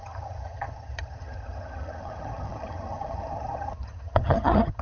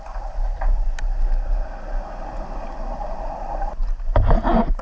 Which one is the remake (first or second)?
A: first